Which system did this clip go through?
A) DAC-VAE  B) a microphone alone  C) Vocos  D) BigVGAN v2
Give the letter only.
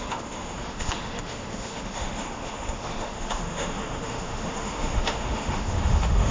A